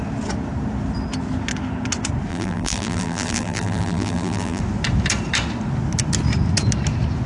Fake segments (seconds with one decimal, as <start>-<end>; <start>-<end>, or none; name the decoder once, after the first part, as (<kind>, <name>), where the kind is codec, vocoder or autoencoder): 2.3-4.6 (vocoder, BigVGAN v2)

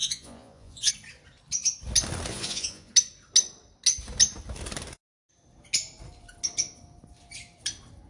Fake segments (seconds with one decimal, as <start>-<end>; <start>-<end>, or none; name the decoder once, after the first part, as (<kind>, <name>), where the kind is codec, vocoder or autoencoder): 0.0-0.9 (vocoder, Vocos); 2.3-2.9